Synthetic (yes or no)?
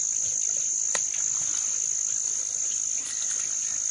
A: no